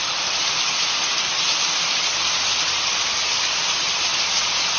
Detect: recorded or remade recorded